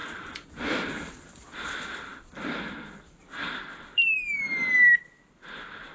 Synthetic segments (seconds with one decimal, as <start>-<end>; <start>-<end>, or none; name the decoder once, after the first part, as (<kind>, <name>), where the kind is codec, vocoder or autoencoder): none